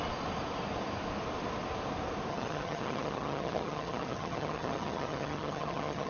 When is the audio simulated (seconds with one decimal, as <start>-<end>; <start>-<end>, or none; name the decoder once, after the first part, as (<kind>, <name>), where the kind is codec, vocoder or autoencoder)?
2.3-6.1 (vocoder, HiFi-GAN)